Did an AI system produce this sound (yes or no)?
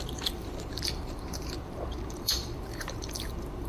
yes